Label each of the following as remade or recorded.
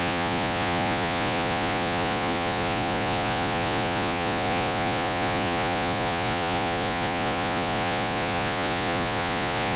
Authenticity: remade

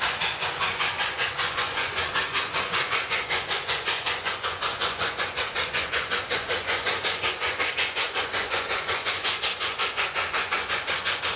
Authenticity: remade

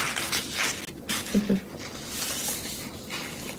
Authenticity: recorded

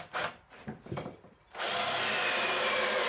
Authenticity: remade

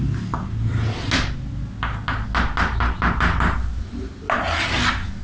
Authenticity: recorded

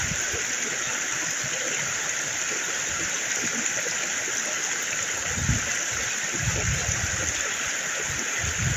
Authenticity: recorded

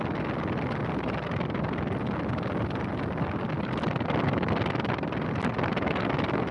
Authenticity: recorded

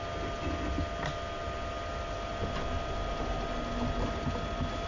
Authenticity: recorded